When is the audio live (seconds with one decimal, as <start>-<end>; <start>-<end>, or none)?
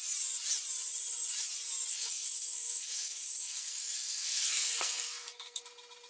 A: 0.0-1.9; 5.6-6.1